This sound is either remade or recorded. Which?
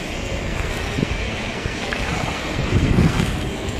remade